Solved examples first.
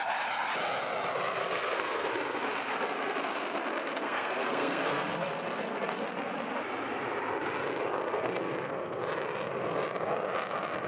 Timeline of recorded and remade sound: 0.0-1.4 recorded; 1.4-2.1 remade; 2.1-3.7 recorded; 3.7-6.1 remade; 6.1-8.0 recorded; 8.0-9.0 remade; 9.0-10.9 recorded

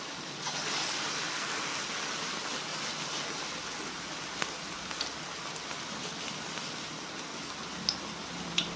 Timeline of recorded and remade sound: 0.0-1.3 recorded; 1.3-1.8 remade; 1.8-8.8 recorded

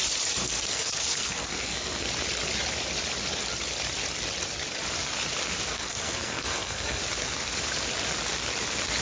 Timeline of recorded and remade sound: 0.0-0.4 recorded; 0.4-2.1 remade; 2.1-5.7 recorded; 5.7-7.0 remade; 7.0-9.0 recorded

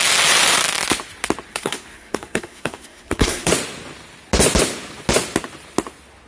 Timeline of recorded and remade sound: 0.0-1.5 recorded; 1.5-3.5 remade; 3.5-6.3 recorded

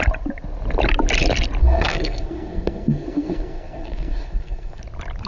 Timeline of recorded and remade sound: 0.0-1.6 recorded; 1.6-4.8 remade; 4.8-5.3 recorded

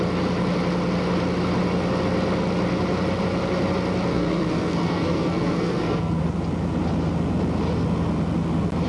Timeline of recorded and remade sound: 0.0-4.1 recorded; 4.1-6.2 remade; 6.2-8.9 recorded

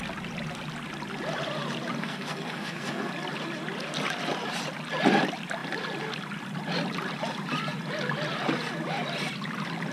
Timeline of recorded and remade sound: 0.0-2.0 recorded; 2.0-3.1 remade; 3.1-9.9 recorded